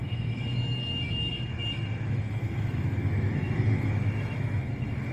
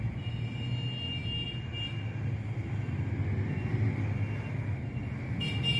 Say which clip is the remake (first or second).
first